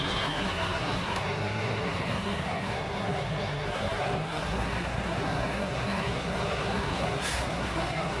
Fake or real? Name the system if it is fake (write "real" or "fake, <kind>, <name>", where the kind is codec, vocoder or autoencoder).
fake, codec, SNAC